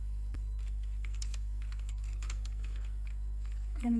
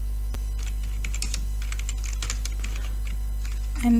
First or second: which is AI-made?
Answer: first